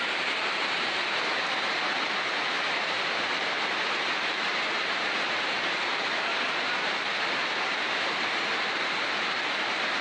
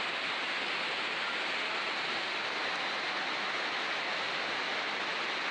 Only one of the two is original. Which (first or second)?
second